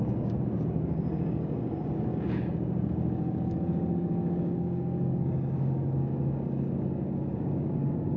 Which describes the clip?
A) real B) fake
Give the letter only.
B